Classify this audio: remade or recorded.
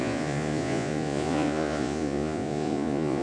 remade